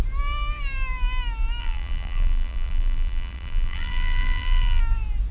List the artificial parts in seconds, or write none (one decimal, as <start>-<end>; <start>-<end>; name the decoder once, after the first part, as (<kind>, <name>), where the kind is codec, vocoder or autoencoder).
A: 1.6-4.8 (vocoder, BigVGAN v2)

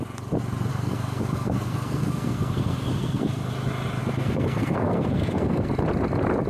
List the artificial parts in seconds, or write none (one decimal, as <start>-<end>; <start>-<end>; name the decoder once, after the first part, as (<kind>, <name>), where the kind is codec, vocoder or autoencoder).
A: 0.7-3.5 (codec, SNAC); 4.0-5.7